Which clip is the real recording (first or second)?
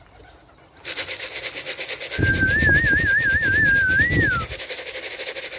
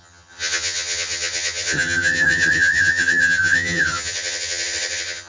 first